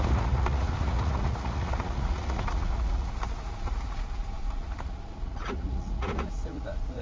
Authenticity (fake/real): fake